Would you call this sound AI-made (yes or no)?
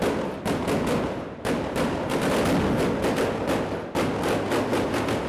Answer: no